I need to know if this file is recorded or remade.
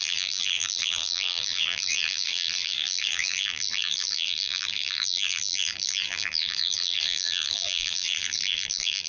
remade